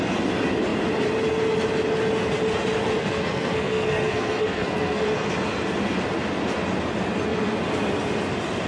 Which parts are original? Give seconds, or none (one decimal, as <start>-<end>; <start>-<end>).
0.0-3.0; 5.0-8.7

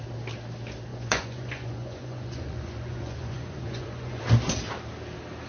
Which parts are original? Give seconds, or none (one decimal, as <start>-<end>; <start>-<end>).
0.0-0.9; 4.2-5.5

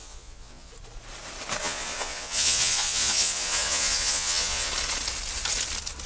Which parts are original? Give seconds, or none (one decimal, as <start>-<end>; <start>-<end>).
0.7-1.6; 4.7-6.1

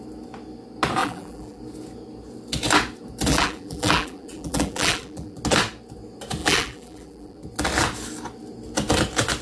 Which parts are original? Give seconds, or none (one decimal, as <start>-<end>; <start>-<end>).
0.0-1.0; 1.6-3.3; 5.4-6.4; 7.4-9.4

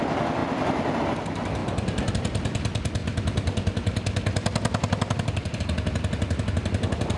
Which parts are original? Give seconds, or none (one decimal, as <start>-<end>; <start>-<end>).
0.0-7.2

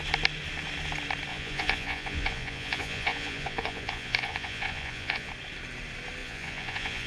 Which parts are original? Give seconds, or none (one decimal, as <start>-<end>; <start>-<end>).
0.0-1.3; 5.3-6.2

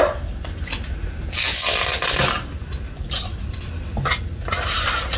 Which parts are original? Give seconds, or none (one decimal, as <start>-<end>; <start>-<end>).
0.0-5.2